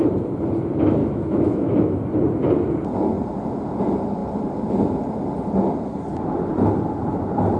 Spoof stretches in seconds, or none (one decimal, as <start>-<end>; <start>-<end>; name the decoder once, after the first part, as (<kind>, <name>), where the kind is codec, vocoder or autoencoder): 1.0-2.0 (autoencoder, DAC-VAE)